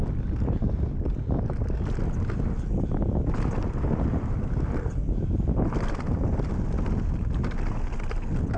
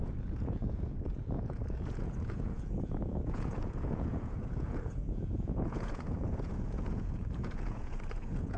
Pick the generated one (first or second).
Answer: second